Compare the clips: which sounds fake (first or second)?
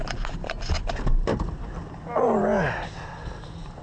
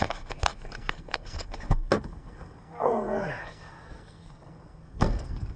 second